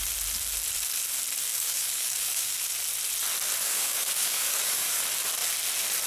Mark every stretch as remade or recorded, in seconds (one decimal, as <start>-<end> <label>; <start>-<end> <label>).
0.0-1.5 recorded; 1.5-2.5 remade; 2.5-3.6 recorded; 3.6-5.0 remade; 5.0-6.1 recorded